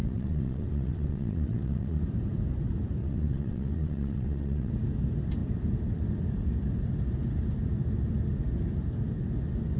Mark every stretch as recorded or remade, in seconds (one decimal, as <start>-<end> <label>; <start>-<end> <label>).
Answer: 0.0-2.0 remade; 2.0-3.0 recorded; 3.0-4.7 remade; 4.7-9.8 recorded

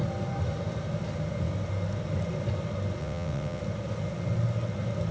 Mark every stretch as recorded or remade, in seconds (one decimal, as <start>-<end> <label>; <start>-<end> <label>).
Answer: 0.0-3.0 recorded; 3.0-3.6 remade; 3.6-5.1 recorded